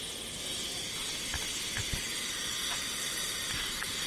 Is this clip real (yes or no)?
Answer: yes